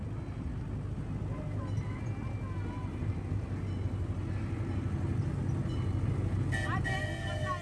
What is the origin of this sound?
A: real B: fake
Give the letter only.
A